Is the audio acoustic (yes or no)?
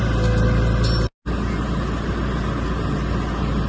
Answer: yes